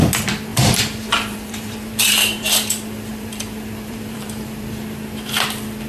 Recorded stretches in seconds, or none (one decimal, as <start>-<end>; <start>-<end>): 0.0-0.5; 2.5-3.1; 4.8-5.9